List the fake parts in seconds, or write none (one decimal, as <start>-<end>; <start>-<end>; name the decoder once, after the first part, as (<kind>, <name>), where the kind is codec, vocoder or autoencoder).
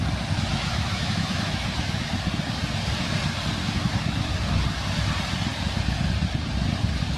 0.5-2.1 (autoencoder, DAC-VAE); 3.6-4.3